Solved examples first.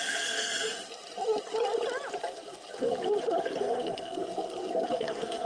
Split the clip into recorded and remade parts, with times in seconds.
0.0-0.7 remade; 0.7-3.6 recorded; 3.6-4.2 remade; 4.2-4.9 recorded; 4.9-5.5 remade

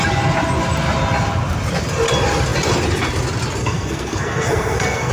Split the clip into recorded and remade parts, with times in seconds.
0.0-3.6 recorded; 3.6-5.1 remade

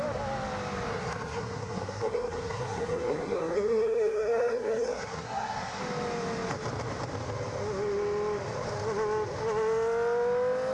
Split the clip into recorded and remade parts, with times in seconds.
0.0-0.9 recorded; 0.9-5.8 remade; 5.8-10.7 recorded